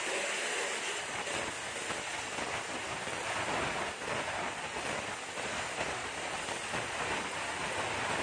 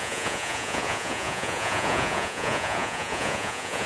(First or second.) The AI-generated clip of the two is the second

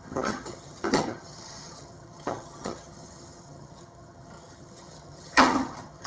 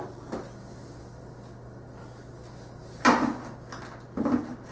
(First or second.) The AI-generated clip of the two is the first